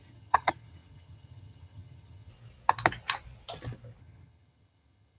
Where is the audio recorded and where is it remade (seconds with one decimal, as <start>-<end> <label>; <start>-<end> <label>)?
0.0-2.3 remade; 2.3-4.0 recorded; 4.0-5.2 remade